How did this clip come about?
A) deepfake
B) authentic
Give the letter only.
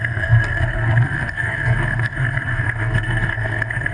A